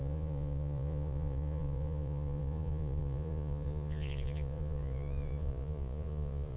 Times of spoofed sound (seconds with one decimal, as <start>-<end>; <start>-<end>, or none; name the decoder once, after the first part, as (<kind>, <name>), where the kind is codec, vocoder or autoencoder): 0.0-6.6 (vocoder, Vocos)